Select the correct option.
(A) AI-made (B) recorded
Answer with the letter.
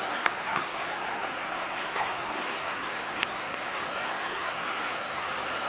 A